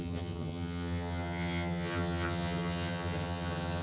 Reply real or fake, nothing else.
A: fake